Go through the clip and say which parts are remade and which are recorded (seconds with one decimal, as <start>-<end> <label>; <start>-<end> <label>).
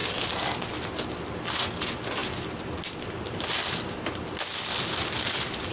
0.0-5.7 recorded